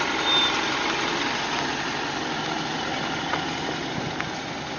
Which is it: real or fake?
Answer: real